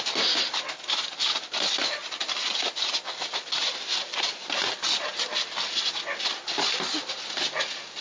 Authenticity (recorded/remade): recorded